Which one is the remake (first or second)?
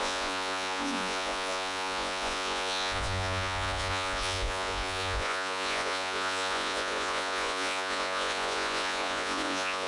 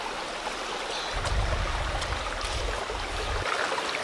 first